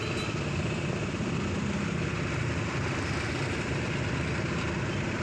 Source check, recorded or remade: recorded